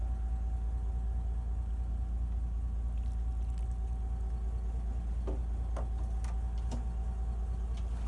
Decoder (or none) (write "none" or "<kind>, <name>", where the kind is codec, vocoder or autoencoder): none